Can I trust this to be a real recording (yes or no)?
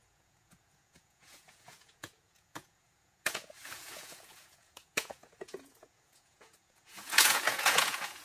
no